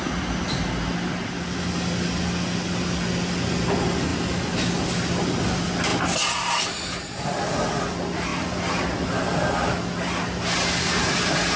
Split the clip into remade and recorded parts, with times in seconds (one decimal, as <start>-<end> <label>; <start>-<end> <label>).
0.0-11.6 recorded